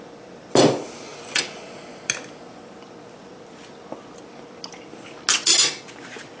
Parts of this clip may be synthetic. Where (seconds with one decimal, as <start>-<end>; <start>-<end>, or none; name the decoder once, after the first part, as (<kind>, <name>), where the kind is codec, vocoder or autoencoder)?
none